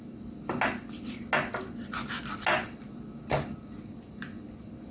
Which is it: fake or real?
real